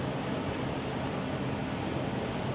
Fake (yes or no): no